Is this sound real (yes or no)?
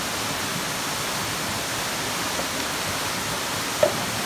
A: yes